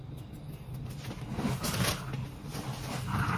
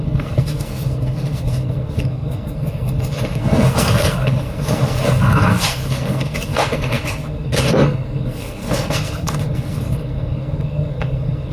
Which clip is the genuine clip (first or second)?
first